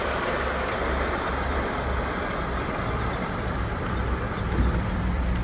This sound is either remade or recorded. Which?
remade